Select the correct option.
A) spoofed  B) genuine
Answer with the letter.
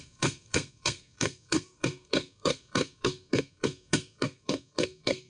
A